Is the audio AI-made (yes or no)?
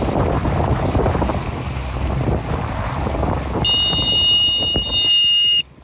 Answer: no